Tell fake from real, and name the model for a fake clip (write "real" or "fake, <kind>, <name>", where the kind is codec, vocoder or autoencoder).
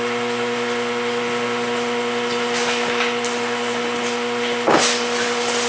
real